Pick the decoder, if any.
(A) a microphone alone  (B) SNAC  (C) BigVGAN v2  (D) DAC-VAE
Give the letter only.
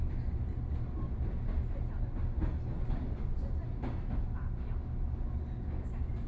A